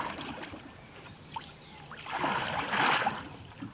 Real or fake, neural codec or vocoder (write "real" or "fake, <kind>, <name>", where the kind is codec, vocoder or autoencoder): real